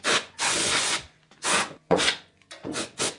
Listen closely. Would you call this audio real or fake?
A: fake